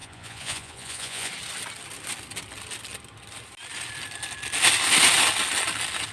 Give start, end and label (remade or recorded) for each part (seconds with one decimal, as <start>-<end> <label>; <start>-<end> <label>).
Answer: 0.0-1.3 remade; 1.3-6.1 recorded